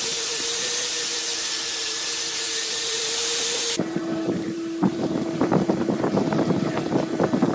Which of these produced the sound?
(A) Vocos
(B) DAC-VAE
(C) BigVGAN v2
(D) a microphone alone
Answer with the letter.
C